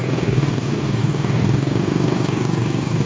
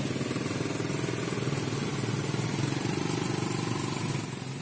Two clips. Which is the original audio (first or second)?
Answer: second